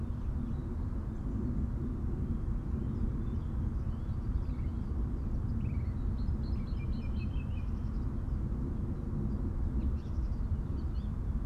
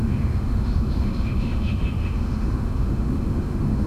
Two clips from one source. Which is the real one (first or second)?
first